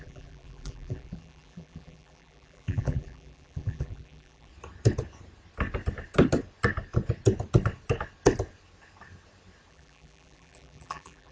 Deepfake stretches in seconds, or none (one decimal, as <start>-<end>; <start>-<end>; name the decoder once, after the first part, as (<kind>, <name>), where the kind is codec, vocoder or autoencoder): 0.0-4.5 (vocoder, BigVGAN v2); 9.7-11.3